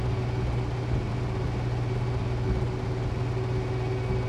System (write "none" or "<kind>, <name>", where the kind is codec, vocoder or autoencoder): none